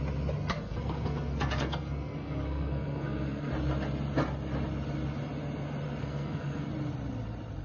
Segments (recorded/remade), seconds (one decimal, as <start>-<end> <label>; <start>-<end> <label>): 0.0-0.4 recorded; 0.4-3.5 remade; 3.5-6.0 recorded; 6.0-6.7 remade; 6.7-7.6 recorded